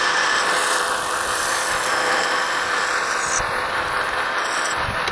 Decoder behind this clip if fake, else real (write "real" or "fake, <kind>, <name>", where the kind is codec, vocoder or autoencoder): fake, vocoder, BigVGAN v2